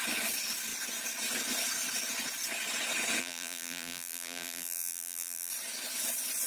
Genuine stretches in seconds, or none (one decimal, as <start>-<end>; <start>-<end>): 0.0-3.2; 5.5-6.5